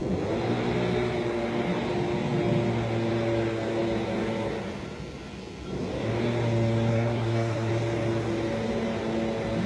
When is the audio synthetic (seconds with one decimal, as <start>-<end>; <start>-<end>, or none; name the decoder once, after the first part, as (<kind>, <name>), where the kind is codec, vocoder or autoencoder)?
6.9-7.7 (codec, SNAC)